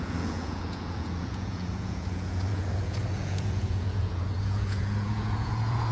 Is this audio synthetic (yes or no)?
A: yes